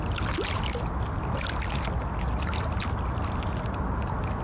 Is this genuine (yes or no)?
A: yes